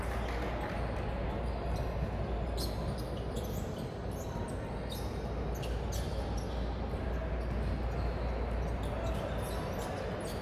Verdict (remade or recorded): recorded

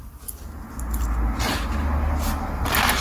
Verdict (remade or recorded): recorded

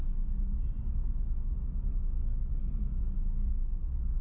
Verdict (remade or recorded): recorded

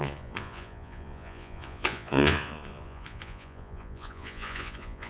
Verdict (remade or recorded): remade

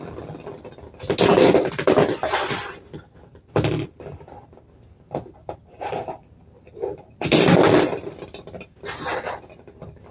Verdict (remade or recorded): recorded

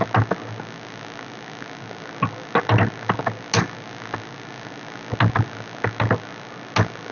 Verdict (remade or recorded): recorded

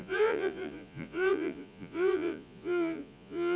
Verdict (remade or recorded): remade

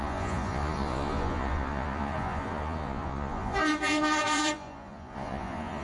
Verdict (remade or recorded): remade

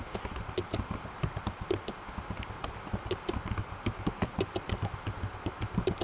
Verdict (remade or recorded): recorded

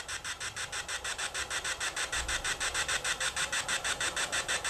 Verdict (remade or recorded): recorded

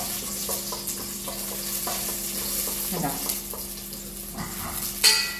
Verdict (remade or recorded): recorded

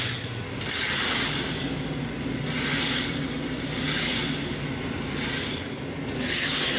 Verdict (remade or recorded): recorded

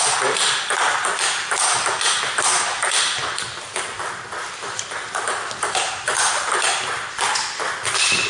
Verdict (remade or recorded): recorded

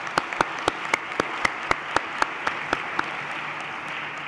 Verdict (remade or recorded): recorded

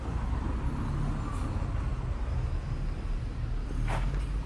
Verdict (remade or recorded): recorded